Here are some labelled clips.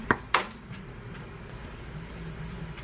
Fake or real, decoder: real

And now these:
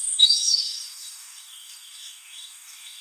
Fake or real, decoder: fake, codec, DAC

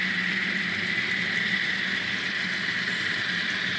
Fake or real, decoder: real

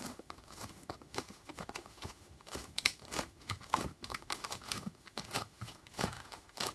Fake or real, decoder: fake, autoencoder, DAC-VAE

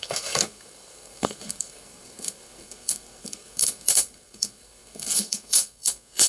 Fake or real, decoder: fake, codec, SNAC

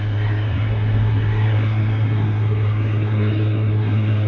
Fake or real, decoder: fake, codec, SNAC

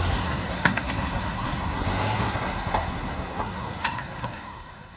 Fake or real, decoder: fake, codec, SNAC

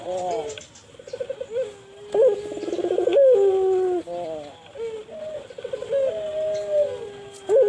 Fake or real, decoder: real